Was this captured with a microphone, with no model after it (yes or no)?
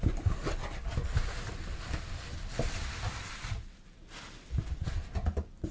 yes